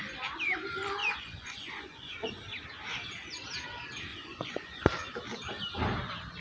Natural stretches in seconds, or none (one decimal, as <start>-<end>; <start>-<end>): 0.0-1.0; 2.4-4.1; 4.9-6.4